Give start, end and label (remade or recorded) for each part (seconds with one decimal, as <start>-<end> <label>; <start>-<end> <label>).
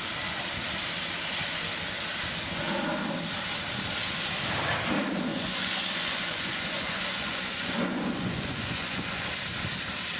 0.0-5.3 recorded; 5.3-9.3 remade; 9.3-10.2 recorded